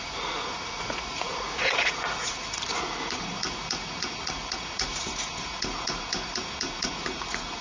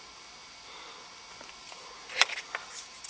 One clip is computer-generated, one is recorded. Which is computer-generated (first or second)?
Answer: first